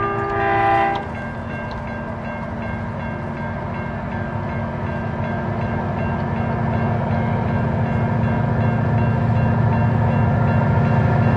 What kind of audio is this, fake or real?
real